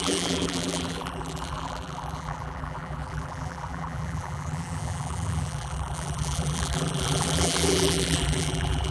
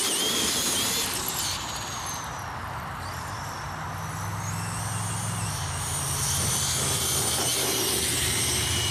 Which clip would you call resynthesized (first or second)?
first